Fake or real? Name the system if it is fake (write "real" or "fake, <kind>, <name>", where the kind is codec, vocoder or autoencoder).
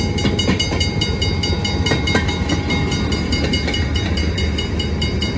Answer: real